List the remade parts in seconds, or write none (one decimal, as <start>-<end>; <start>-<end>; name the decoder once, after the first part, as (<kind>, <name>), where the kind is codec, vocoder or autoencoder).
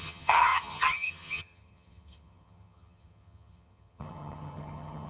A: 0.0-5.1 (vocoder, HiFi-GAN)